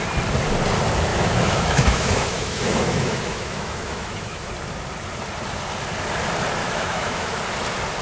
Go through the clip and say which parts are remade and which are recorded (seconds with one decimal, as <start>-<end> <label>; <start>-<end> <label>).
0.0-1.1 recorded; 1.1-4.5 remade; 4.5-6.6 recorded; 6.6-7.4 remade; 7.4-8.0 recorded